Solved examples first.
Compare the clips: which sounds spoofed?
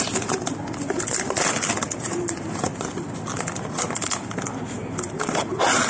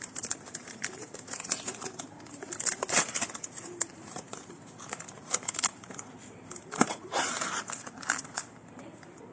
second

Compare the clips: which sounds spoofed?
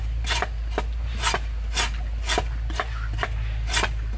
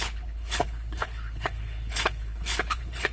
second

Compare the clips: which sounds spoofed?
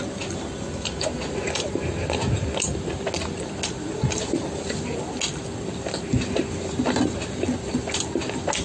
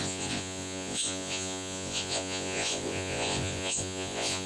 second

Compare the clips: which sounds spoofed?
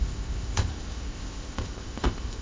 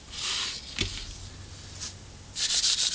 first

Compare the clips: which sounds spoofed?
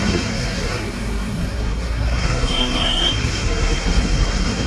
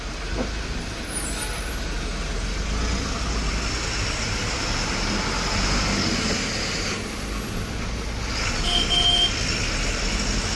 first